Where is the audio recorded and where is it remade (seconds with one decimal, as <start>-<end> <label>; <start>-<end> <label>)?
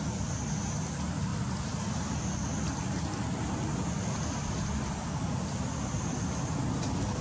0.0-7.2 recorded